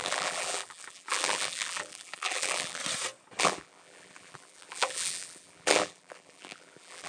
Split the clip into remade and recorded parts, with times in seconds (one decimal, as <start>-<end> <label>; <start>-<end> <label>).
0.0-2.8 remade; 2.8-3.4 recorded; 3.4-7.1 remade